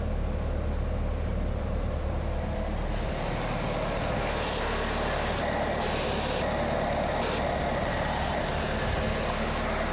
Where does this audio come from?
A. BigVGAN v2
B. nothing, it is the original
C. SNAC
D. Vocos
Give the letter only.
B